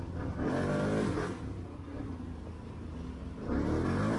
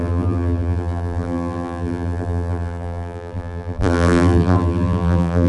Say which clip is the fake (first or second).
second